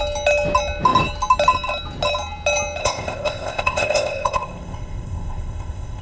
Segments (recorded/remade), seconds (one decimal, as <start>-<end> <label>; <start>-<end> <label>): 0.0-2.8 recorded; 2.8-6.0 remade